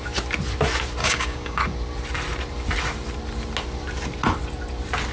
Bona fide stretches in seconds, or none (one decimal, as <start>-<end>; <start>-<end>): 0.0-1.0; 1.6-5.1